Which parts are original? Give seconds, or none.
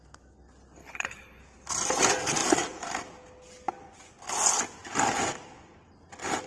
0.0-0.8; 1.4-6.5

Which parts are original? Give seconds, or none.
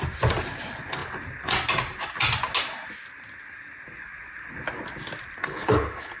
0.0-5.4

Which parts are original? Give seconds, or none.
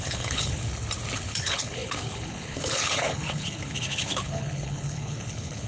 0.7-1.2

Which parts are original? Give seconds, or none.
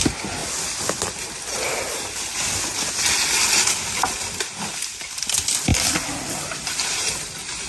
0.0-7.7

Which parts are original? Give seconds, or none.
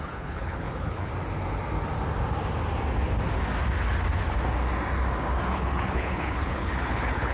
1.1-5.5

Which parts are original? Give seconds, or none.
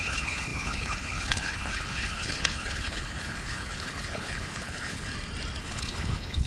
5.1-5.6